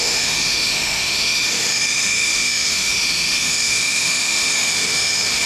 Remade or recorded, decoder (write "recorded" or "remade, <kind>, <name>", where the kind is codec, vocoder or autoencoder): remade, autoencoder, DAC-VAE